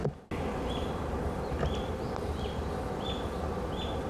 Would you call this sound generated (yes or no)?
no